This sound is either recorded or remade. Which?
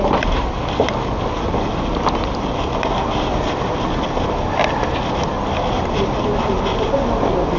recorded